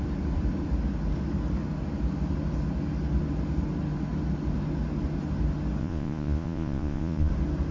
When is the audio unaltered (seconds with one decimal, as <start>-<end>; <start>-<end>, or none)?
0.0-5.8; 7.3-7.7